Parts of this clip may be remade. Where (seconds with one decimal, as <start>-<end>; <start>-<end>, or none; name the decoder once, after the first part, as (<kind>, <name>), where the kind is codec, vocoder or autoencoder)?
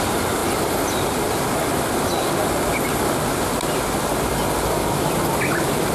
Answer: none